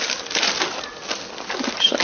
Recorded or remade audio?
recorded